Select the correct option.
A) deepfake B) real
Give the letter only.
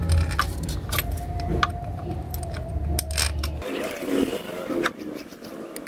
B